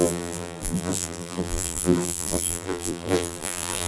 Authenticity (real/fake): fake